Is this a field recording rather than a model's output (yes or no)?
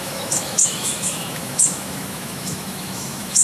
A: no